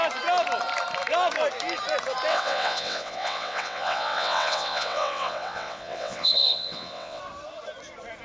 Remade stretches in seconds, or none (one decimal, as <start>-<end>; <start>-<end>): 2.3-7.2